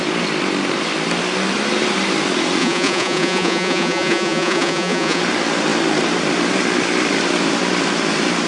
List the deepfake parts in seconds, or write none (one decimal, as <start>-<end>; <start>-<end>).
2.6-5.2